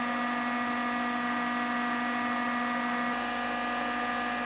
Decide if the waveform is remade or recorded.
recorded